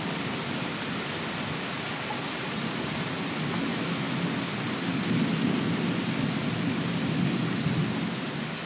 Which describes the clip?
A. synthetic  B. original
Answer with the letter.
B